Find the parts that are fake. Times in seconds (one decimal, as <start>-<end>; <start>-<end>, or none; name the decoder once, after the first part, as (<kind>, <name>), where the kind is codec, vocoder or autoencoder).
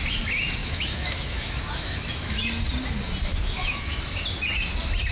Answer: 0.6-2.4 (autoencoder, DAC-VAE); 3.3-4.0